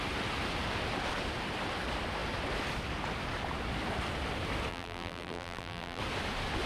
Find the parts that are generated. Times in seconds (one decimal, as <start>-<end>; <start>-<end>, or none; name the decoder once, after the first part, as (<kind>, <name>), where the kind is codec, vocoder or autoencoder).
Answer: 4.7-6.0 (vocoder, BigVGAN v2)